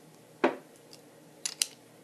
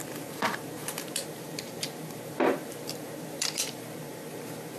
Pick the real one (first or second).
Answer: first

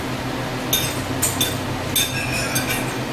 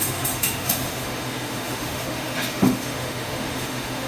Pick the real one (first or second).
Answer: first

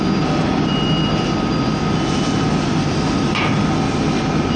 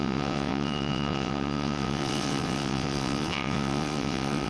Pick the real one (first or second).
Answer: first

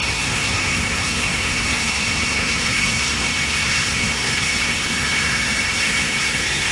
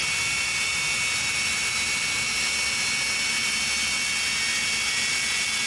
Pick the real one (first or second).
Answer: second